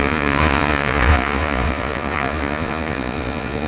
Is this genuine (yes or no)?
no